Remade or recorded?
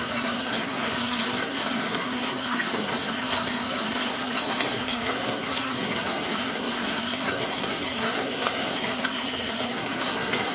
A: remade